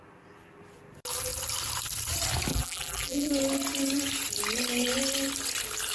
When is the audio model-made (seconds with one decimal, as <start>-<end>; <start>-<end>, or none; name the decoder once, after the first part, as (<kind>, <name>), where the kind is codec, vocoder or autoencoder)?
2.5-3.3 (vocoder, BigVGAN v2)